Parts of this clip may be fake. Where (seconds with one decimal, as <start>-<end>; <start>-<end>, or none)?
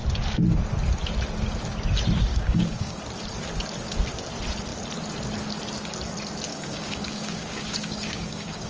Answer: 2.3-3.0; 6.5-8.7